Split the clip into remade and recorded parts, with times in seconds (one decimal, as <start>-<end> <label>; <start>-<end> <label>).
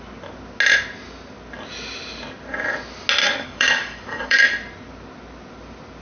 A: 0.0-3.2 recorded; 3.2-4.4 remade; 4.4-6.0 recorded